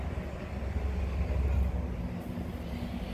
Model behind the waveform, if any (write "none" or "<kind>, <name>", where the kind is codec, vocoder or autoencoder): none